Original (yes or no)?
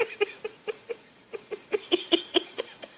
no